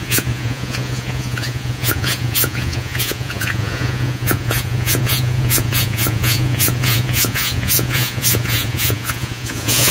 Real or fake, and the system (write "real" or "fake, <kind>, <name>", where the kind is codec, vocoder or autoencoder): fake, vocoder, Vocos